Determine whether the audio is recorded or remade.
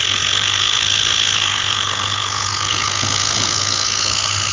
remade